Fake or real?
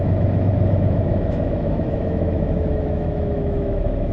fake